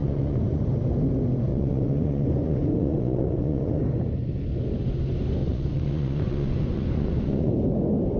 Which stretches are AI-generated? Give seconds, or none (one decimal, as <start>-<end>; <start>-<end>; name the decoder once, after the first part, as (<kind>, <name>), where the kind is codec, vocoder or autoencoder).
0.0-0.6 (vocoder, Vocos); 1.5-3.8; 5.4-7.5